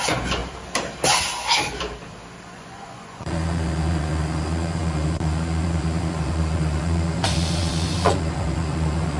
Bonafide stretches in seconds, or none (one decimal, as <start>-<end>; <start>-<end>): 0.4-2.4